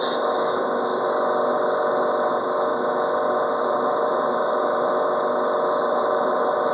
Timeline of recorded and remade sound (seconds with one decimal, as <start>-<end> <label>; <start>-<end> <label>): 0.0-3.6 recorded; 3.6-4.9 remade; 4.9-5.8 recorded; 5.8-6.7 remade

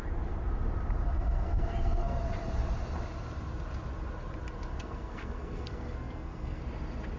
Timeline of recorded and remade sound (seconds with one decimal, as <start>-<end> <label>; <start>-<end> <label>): 0.0-1.1 recorded; 1.1-2.2 remade; 2.2-4.7 recorded; 4.7-6.6 remade; 6.6-7.2 recorded

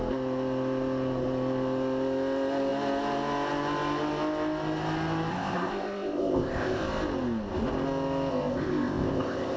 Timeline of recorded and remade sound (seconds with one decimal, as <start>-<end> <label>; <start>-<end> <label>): 0.0-5.3 recorded; 5.3-6.8 remade; 6.8-8.3 recorded; 8.3-9.6 remade

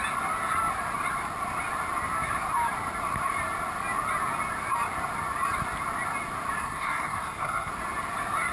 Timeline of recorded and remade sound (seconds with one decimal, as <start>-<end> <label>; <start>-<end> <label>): 0.0-6.6 recorded; 6.6-7.7 remade; 7.7-8.5 recorded